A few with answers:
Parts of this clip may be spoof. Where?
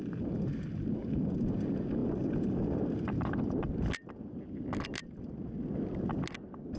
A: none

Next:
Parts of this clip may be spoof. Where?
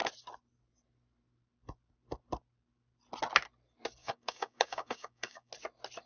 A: 4.0-5.5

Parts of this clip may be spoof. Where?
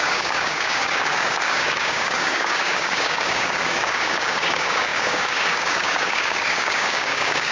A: 0.0-7.5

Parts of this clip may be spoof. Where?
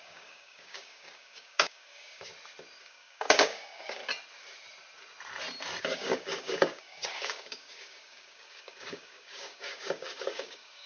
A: 0.0-2.3; 2.8-4.0; 5.8-10.9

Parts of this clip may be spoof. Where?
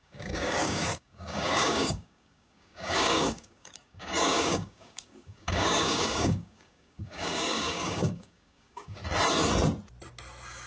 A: 0.0-9.0